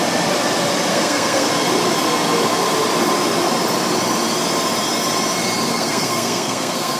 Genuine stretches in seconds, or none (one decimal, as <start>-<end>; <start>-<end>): 0.0-0.9; 1.5-5.7

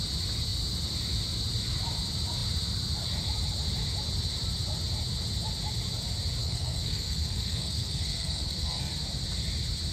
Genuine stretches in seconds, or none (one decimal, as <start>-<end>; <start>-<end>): 0.0-6.4; 8.9-9.9

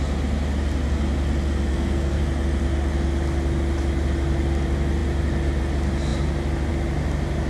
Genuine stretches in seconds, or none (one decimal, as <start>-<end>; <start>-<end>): 0.0-1.7; 2.2-7.5

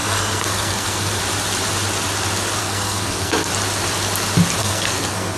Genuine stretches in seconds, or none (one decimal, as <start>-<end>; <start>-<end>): 1.2-2.6; 3.5-4.6

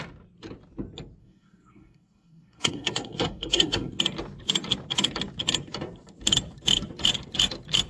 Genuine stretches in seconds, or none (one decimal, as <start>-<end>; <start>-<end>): 0.0-1.2; 4.0-7.9